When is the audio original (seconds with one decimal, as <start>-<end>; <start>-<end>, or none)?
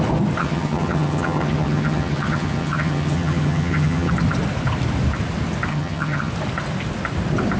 0.0-0.4; 4.1-5.7; 6.3-7.6